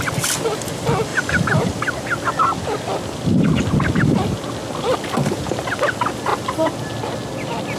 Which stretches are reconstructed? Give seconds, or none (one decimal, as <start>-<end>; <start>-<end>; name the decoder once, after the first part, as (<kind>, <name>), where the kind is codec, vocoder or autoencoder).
1.1-1.7 (vocoder, BigVGAN v2); 6.3-6.8